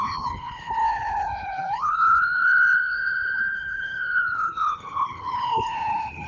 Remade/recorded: remade